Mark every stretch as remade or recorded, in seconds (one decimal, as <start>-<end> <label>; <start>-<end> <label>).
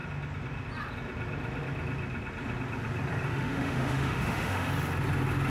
0.0-3.3 recorded; 3.3-4.7 remade; 4.7-5.5 recorded